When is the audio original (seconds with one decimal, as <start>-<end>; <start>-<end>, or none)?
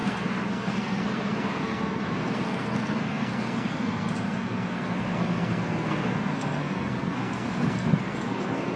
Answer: none